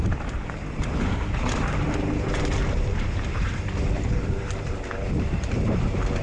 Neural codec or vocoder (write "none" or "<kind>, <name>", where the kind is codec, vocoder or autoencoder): vocoder, BigVGAN v2